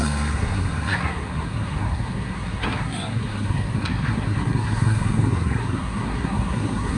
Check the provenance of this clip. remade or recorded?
remade